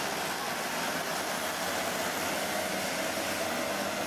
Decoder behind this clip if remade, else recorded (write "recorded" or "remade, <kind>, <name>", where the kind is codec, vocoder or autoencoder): recorded